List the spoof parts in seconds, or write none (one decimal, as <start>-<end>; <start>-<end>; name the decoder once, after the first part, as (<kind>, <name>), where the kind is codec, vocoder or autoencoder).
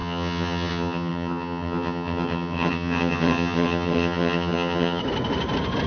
0.0-5.0 (vocoder, HiFi-GAN)